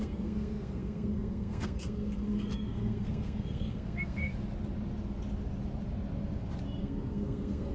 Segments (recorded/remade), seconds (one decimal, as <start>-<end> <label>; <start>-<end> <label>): 0.0-4.3 remade; 4.3-6.8 recorded; 6.8-7.7 remade